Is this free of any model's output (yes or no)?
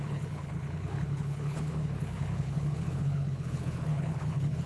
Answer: no